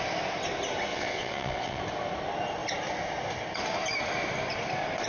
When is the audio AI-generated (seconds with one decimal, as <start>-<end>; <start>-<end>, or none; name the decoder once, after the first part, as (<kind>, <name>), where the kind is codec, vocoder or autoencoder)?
0.9-1.8 (vocoder, WaveNeXt)